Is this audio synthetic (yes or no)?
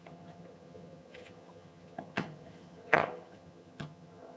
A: yes